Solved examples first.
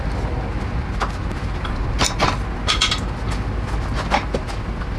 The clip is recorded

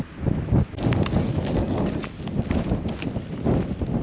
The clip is recorded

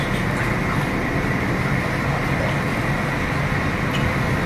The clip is recorded